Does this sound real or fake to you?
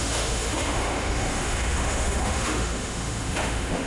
fake